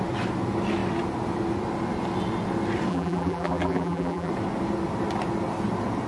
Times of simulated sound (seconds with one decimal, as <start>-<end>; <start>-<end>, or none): 2.9-4.3